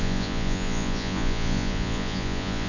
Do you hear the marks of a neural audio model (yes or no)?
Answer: yes